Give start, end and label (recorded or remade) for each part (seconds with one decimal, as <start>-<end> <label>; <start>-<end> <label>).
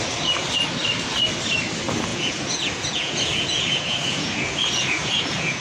0.0-2.1 recorded; 2.1-5.6 remade